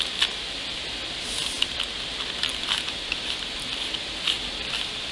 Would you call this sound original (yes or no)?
yes